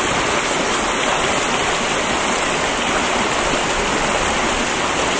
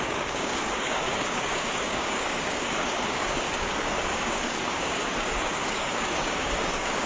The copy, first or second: second